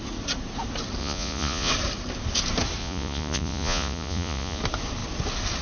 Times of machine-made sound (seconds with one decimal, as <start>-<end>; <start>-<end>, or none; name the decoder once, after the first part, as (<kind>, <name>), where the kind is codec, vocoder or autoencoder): 1.0-1.7 (vocoder, Vocos); 2.8-4.6